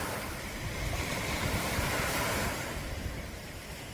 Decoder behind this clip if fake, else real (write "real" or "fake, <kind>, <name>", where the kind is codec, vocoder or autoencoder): real